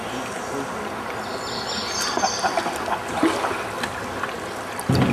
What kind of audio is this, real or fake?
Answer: real